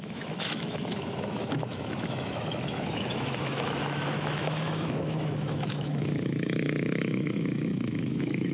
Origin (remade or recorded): remade